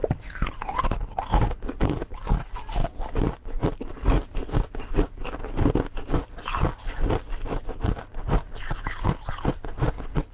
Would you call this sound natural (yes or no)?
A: yes